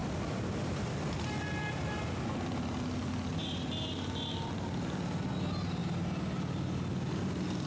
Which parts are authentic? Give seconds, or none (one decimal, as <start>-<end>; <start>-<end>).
0.0-7.7